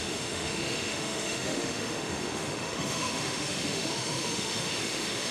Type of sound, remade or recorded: remade